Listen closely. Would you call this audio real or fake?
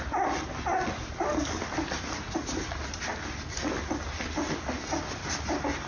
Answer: real